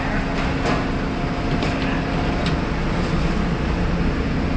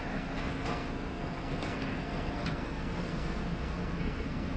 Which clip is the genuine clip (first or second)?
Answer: first